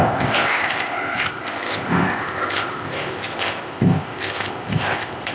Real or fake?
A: fake